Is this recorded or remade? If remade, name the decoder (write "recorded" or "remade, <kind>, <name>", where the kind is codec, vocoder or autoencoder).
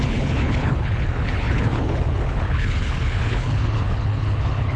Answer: remade, codec, HILCodec